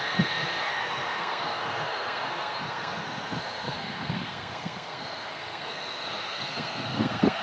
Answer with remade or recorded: remade